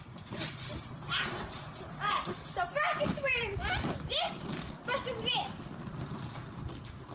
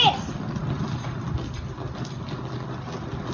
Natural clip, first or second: second